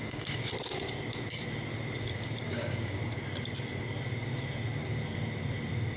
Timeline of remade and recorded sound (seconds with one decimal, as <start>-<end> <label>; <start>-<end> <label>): 0.0-0.5 remade; 0.5-2.0 recorded; 2.0-3.0 remade; 3.0-6.0 recorded